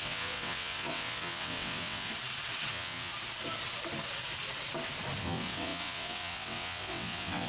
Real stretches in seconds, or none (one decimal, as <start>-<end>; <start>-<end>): 2.1-2.7; 3.1-5.2